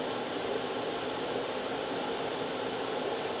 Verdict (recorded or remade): recorded